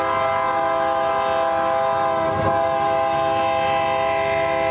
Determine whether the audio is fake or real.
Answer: real